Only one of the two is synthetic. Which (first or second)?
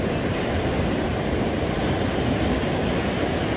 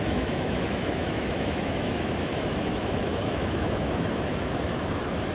second